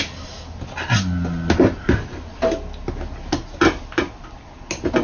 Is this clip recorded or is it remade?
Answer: recorded